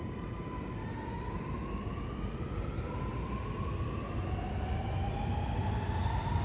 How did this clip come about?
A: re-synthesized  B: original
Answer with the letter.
B